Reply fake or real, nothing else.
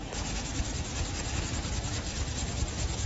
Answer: real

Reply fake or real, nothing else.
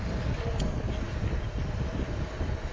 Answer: real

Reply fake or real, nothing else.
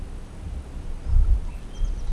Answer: real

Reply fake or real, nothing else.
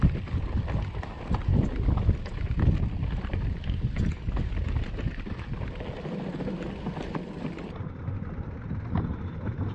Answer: real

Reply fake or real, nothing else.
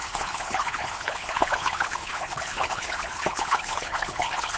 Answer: fake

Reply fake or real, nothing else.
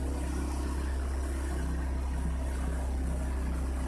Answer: real